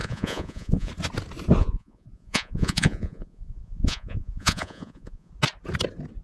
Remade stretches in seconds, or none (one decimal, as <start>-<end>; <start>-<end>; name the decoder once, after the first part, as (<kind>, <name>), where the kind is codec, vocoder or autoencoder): 0.0-0.9 (vocoder, Vocos); 1.6-5.3